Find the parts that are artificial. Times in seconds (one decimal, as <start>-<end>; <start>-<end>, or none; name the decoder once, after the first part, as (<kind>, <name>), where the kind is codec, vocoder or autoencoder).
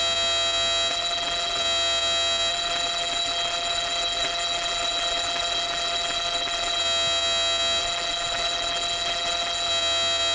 0.9-1.6 (vocoder, BigVGAN v2); 2.5-6.8; 7.8-9.7